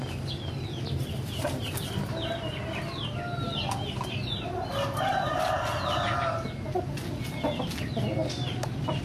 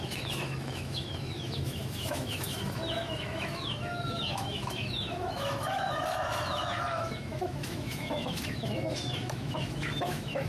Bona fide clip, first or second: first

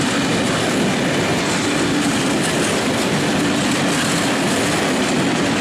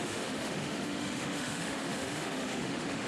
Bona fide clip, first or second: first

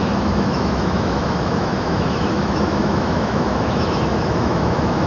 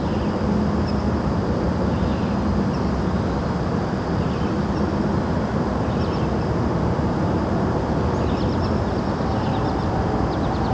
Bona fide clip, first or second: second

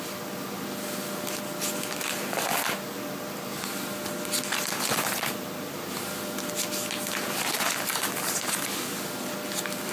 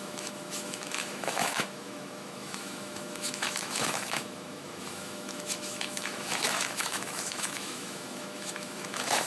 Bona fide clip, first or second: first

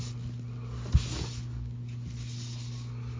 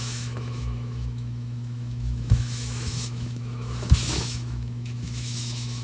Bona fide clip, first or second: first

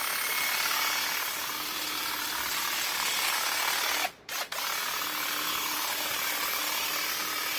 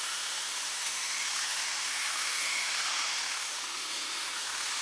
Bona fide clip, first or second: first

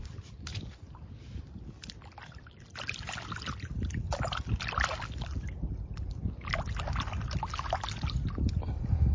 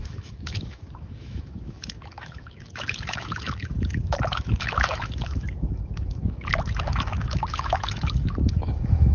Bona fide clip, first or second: first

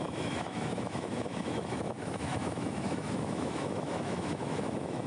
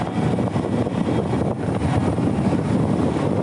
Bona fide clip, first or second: second